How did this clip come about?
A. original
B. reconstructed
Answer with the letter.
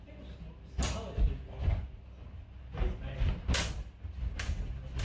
A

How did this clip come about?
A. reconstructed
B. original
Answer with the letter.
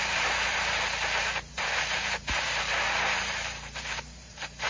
A